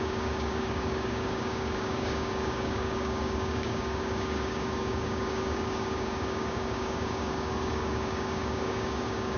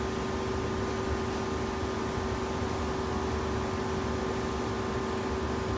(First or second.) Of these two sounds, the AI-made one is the first